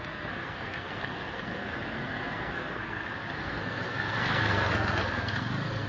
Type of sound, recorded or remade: remade